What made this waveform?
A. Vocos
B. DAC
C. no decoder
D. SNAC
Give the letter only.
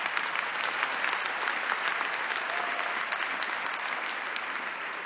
C